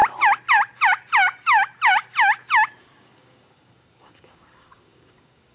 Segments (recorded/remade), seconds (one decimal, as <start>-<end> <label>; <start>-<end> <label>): 0.0-2.8 recorded; 2.8-5.5 remade